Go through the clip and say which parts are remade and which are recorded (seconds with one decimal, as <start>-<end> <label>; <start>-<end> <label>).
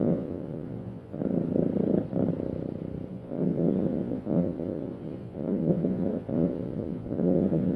0.0-1.2 remade; 1.2-3.1 recorded; 3.1-7.8 remade